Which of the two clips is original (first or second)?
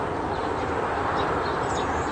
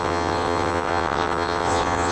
first